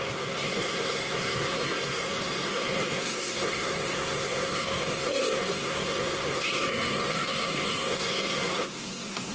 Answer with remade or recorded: remade